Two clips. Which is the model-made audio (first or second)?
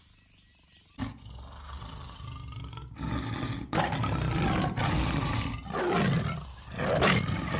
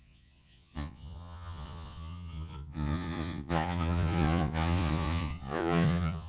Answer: second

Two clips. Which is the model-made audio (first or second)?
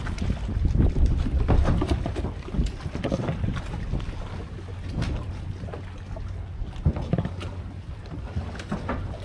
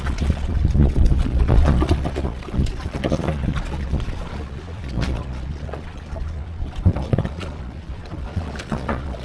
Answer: second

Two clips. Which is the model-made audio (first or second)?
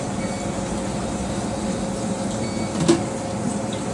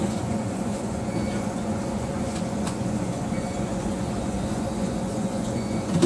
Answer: second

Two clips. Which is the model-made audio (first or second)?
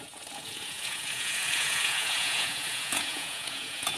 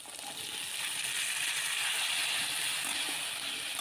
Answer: first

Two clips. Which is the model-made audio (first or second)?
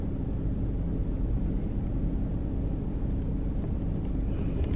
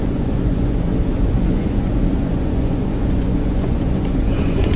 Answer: second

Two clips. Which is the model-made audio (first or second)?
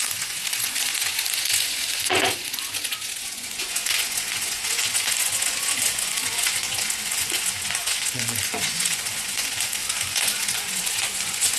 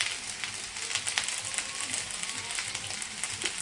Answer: first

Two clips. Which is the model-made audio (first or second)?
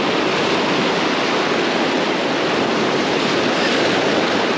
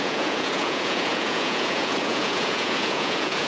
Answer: second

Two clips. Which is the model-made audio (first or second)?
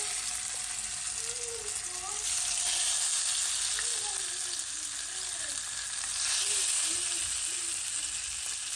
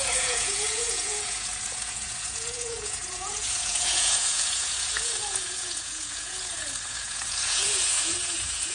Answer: second